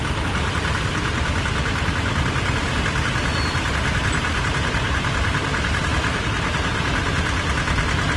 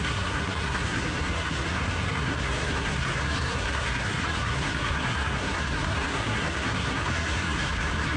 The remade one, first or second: second